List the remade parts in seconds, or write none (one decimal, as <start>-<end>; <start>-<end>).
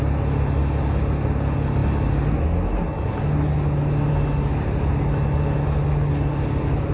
none